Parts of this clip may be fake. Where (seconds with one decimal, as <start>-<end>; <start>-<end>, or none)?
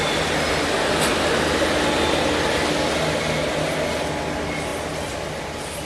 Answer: none